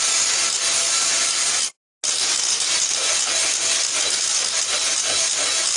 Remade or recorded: recorded